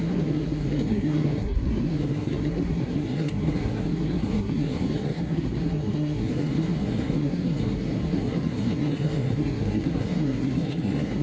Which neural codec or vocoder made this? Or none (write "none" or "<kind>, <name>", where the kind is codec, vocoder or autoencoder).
codec, SNAC